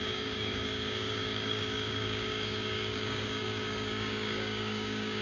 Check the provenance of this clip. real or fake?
fake